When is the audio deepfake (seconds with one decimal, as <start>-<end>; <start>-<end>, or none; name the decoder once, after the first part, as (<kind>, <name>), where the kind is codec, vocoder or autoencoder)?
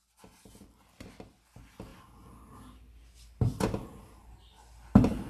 none